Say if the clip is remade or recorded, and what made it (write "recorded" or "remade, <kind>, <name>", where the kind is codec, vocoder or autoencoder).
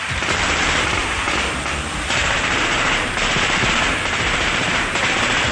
remade, vocoder, BigVGAN v2